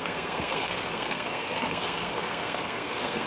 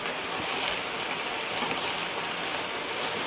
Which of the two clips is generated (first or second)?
first